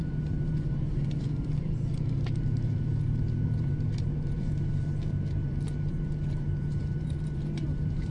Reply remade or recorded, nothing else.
remade